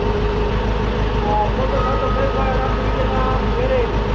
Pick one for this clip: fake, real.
real